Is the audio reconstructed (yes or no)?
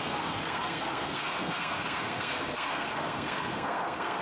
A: yes